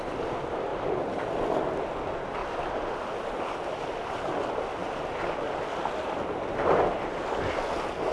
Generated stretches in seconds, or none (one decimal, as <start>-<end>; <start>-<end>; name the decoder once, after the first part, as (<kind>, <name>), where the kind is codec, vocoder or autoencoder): 0.7-1.2 (vocoder, BigVGAN v2); 2.4-3.0